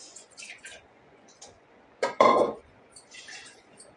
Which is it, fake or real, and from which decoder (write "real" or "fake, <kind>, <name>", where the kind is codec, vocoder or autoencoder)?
fake, vocoder, Vocos